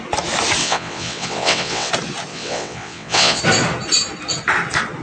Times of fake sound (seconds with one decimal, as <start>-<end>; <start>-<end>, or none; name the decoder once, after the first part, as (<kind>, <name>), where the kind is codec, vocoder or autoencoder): 0.6-1.9 (vocoder, WaveNeXt); 2.3-3.4